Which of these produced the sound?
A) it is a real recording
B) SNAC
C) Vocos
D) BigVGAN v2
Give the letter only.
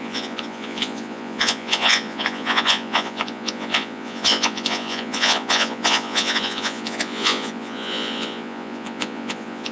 C